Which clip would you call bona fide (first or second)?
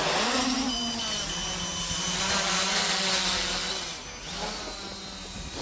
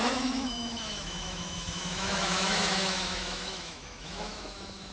first